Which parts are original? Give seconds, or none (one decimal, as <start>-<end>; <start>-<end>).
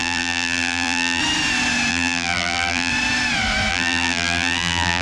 1.2-1.9; 2.9-3.7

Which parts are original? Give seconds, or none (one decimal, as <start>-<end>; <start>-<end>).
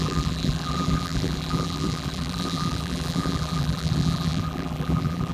none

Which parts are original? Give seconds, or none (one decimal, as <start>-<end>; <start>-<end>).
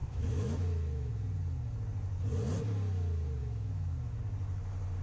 1.1-3.4; 4.2-5.0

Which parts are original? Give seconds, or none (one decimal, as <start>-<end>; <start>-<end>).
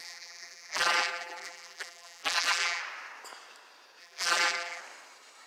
2.8-4.0; 4.8-5.5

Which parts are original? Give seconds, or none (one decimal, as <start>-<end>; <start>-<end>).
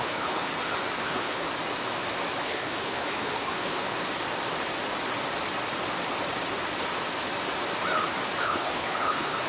0.5-1.0; 1.5-2.4; 4.0-8.4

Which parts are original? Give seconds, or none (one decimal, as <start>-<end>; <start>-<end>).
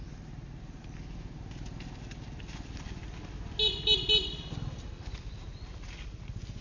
0.0-6.6